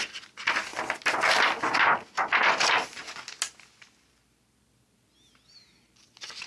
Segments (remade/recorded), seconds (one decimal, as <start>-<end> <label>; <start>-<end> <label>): 0.0-6.5 recorded